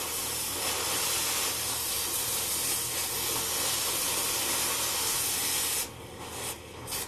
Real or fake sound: real